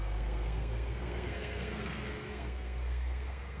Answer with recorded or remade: remade